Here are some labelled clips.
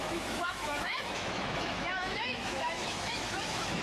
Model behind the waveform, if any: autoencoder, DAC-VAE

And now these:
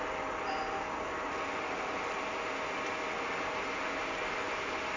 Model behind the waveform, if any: none